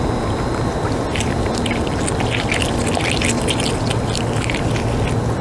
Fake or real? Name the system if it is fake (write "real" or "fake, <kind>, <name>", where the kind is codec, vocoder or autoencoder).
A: real